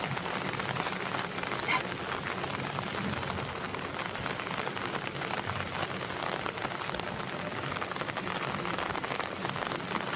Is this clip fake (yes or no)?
no